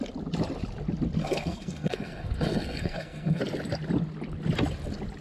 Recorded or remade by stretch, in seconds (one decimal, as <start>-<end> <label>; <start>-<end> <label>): 0.0-1.2 recorded; 1.2-3.4 remade; 3.4-5.2 recorded